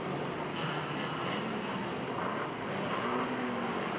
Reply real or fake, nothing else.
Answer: real